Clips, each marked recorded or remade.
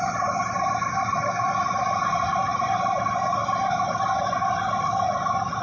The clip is recorded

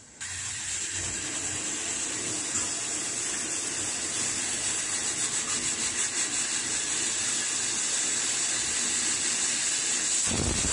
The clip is recorded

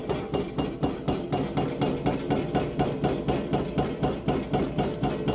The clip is recorded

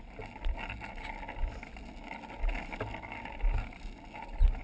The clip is recorded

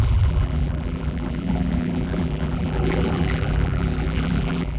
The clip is remade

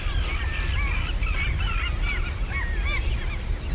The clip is recorded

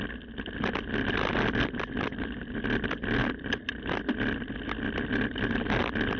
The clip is recorded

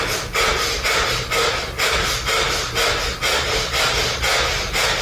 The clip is recorded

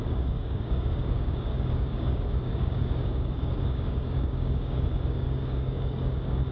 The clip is remade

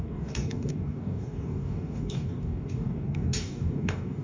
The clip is remade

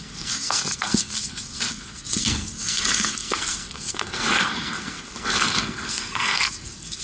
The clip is remade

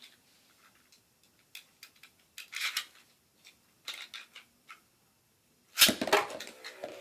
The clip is recorded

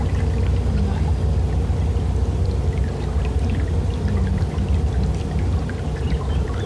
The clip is recorded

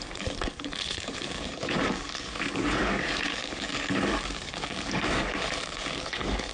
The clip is remade